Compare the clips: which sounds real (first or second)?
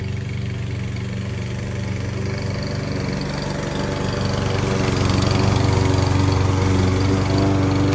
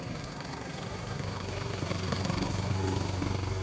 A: first